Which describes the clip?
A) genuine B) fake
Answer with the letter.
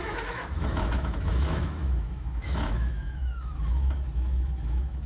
B